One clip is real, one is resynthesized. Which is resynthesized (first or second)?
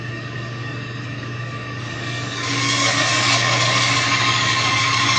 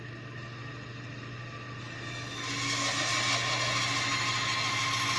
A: first